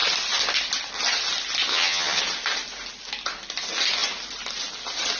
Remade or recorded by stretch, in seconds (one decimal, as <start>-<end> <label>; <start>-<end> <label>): 0.0-1.7 recorded; 1.7-2.2 remade; 2.2-5.2 recorded